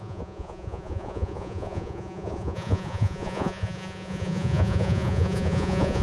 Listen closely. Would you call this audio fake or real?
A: fake